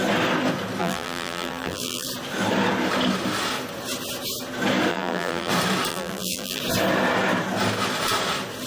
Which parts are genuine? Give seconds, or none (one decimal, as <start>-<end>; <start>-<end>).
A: 0.0-0.8; 2.1-4.9; 5.5-5.9; 6.6-8.7